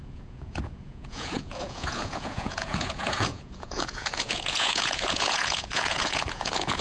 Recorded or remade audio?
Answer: remade